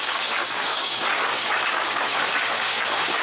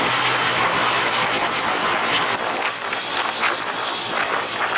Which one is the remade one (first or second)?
first